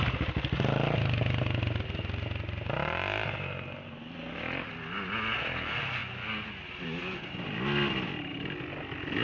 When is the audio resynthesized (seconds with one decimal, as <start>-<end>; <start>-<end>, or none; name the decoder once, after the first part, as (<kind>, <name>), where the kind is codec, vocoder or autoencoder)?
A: none